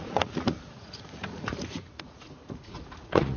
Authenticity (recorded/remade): remade